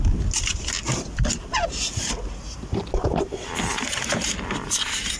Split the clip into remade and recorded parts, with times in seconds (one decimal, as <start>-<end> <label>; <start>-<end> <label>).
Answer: 0.0-5.2 recorded